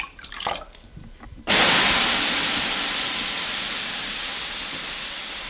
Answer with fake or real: real